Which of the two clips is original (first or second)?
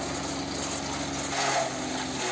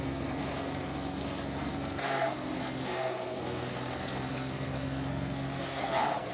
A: first